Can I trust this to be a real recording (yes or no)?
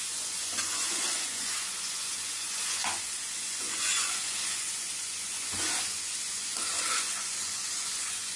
no